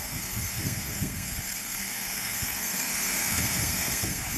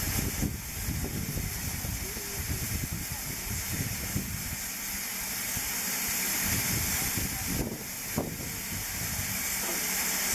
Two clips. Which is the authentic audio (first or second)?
second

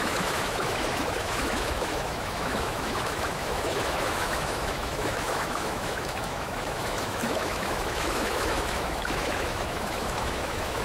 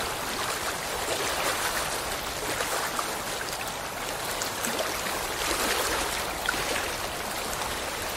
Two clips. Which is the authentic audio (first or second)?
second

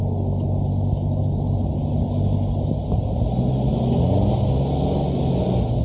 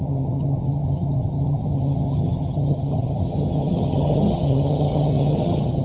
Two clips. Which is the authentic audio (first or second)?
first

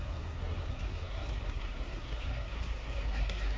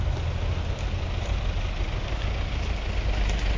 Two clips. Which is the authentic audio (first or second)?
second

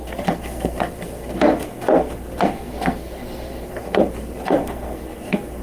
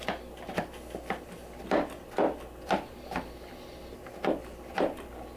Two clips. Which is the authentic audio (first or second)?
second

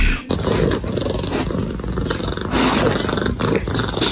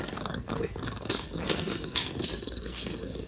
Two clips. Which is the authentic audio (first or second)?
first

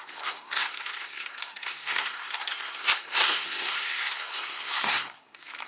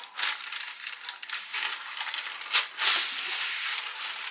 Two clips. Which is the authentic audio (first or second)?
second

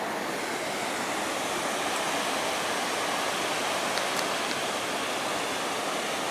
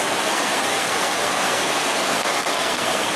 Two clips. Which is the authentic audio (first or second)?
first